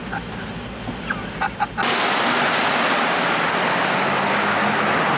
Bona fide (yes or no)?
yes